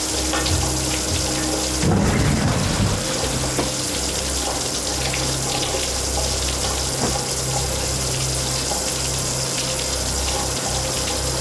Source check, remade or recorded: recorded